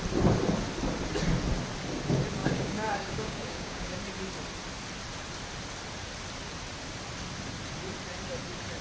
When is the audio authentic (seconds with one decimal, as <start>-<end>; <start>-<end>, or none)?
0.0-2.4; 4.0-8.8

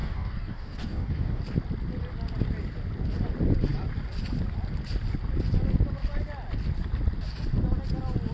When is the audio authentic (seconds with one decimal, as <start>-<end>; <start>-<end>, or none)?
1.4-8.3